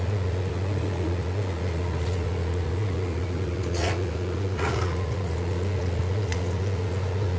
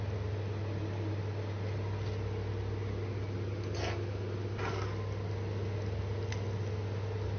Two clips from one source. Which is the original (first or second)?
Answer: second